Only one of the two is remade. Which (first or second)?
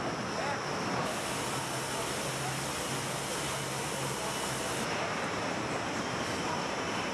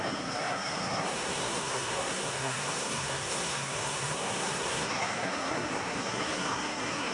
second